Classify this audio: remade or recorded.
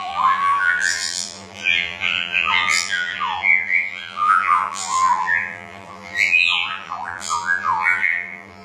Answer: remade